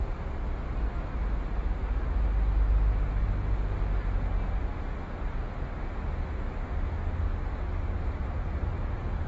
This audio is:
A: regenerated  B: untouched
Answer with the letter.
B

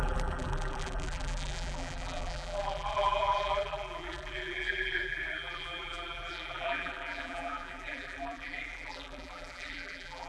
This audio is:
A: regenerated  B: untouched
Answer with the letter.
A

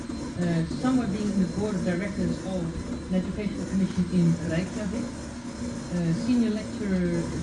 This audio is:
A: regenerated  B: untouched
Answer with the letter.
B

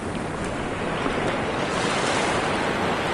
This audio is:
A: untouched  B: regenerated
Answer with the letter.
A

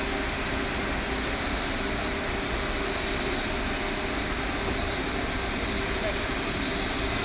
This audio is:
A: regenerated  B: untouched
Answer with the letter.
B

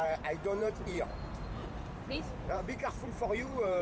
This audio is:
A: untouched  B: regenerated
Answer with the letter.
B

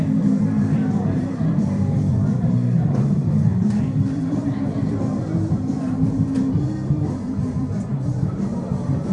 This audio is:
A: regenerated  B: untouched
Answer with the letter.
A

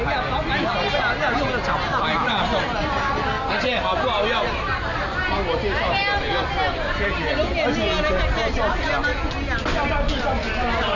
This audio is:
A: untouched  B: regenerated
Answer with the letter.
A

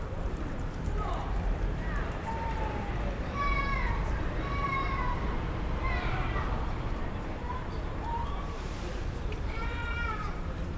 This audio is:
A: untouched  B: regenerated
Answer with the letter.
B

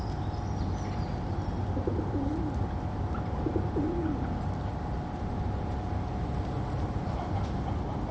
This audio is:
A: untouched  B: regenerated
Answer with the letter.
A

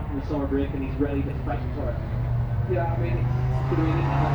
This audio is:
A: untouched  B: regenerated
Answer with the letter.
A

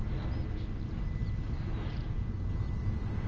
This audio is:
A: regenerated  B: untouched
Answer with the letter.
B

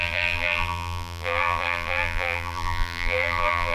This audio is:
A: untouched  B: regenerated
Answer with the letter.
B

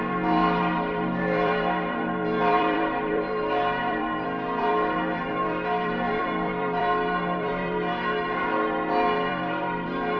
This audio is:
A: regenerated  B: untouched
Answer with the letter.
A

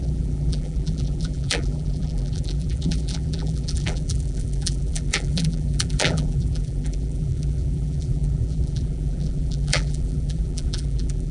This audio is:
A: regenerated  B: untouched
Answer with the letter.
A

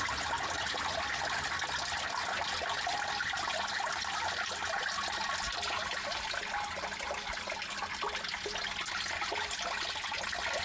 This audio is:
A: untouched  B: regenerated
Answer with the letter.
A